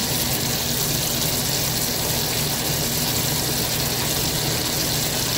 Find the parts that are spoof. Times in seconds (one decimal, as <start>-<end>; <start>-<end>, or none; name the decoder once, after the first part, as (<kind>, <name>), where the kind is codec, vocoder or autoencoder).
none